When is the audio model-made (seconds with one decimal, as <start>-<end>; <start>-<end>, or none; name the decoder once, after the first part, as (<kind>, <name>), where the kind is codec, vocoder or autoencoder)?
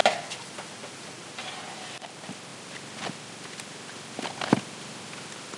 none